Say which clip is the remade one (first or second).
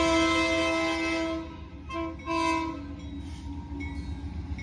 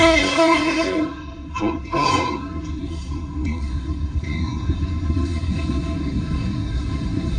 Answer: second